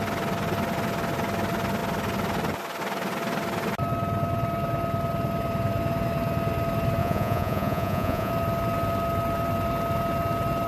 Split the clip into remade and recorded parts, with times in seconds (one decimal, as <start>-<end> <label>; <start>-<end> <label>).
0.0-7.0 recorded; 7.0-8.3 remade; 8.3-10.7 recorded